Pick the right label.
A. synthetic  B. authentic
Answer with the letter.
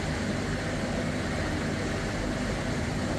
B